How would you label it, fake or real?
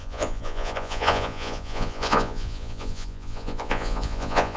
fake